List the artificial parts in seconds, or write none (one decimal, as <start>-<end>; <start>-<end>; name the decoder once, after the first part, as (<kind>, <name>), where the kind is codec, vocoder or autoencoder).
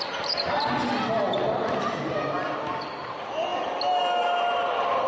none